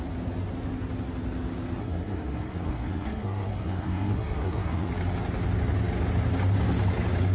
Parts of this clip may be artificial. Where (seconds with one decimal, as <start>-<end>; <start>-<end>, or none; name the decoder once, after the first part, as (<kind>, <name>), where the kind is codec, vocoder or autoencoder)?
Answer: 1.8-4.9 (codec, SNAC)